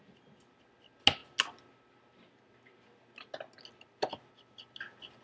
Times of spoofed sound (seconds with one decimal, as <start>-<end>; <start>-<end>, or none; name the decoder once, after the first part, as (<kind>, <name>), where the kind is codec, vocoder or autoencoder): none